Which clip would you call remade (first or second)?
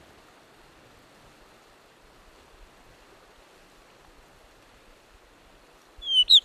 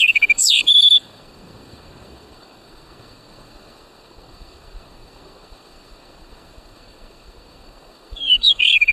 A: second